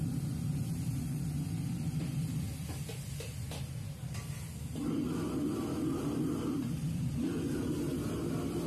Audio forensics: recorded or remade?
recorded